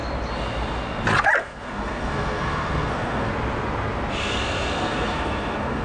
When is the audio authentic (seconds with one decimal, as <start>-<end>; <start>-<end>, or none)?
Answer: 0.0-1.4; 3.3-4.2